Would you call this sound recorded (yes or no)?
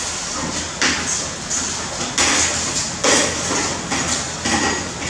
yes